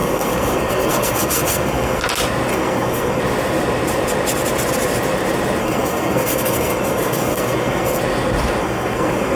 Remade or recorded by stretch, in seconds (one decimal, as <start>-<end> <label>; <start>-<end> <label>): 0.0-2.0 remade; 2.0-2.5 recorded; 2.5-3.2 remade; 3.2-5.6 recorded; 5.6-8.0 remade; 8.0-8.6 recorded; 8.6-9.4 remade